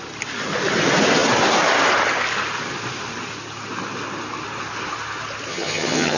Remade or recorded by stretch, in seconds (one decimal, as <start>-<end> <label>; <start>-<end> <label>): 0.0-5.5 recorded; 5.5-6.2 remade